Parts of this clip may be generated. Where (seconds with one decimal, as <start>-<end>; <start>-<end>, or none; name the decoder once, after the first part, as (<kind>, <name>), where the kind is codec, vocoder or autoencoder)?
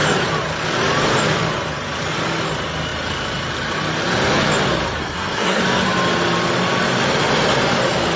5.0-5.6 (codec, SNAC)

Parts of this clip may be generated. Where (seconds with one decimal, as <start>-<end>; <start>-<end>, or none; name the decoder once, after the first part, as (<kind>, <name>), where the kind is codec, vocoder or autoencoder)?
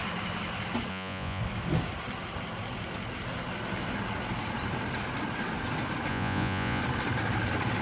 0.9-1.4 (vocoder, Vocos); 6.1-6.8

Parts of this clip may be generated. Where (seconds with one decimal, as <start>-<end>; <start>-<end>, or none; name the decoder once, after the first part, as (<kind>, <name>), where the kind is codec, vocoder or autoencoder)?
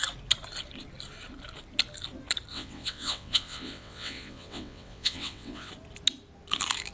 2.5-5.7 (vocoder, WaveNeXt)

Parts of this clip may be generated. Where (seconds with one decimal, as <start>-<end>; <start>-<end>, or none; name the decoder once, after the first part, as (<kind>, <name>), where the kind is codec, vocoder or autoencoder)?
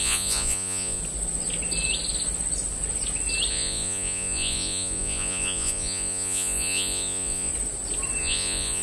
0.0-1.0 (vocoder, Vocos); 3.5-7.5; 8.2-8.8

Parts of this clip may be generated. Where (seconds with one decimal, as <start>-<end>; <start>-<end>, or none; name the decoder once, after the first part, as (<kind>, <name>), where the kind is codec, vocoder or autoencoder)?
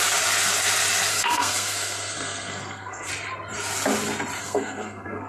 1.1-3.1 (codec, SNAC); 4.4-5.3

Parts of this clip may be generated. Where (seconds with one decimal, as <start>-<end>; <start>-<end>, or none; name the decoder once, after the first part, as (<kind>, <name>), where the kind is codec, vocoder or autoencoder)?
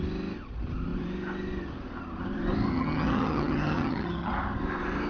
2.7-4.3 (vocoder, HiFi-GAN)